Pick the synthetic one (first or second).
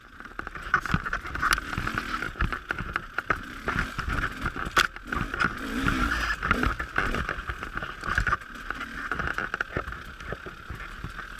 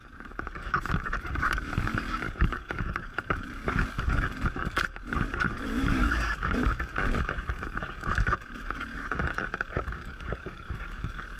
second